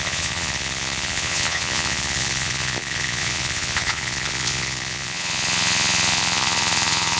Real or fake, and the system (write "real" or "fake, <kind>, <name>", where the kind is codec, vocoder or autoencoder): fake, vocoder, Vocos